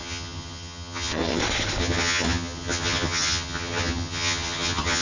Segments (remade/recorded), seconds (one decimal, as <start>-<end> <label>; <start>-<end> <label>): 0.0-1.4 remade; 1.4-1.8 recorded; 1.8-5.0 remade

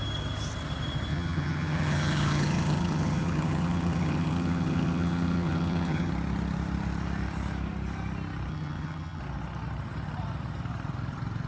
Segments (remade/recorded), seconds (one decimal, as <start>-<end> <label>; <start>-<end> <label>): 0.0-1.1 recorded; 1.1-6.1 remade; 6.1-8.5 recorded; 8.5-9.2 remade; 9.2-11.5 recorded

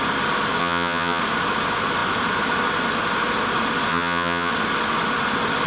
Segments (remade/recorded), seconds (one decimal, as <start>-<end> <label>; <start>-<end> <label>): 0.0-0.6 recorded; 0.6-1.2 remade; 1.2-3.9 recorded; 3.9-4.5 remade; 4.5-5.7 recorded